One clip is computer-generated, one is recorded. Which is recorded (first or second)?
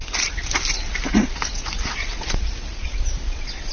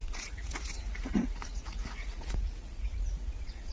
first